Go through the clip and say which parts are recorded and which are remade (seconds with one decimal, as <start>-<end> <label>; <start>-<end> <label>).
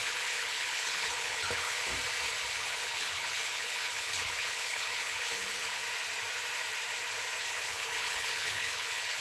0.0-1.9 remade; 1.9-2.5 recorded; 2.5-5.8 remade; 5.8-7.4 recorded; 7.4-9.2 remade